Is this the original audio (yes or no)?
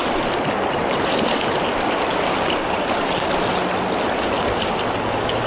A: yes